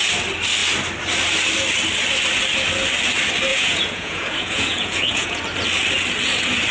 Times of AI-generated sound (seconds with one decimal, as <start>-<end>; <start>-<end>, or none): 3.5-5.4